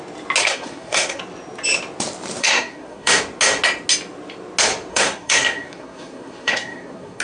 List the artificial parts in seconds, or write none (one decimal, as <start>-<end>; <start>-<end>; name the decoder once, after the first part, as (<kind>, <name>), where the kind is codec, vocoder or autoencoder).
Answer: 0.4-1.2 (codec, SNAC); 2.4-3.2; 4.9-7.2